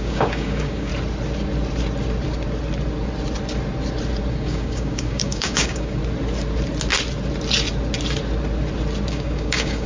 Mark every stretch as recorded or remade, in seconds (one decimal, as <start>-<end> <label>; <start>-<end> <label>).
0.0-0.9 remade; 0.9-4.3 recorded; 4.3-6.0 remade; 6.0-9.1 recorded; 9.1-9.9 remade